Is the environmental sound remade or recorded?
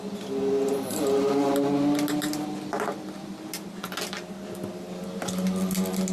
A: recorded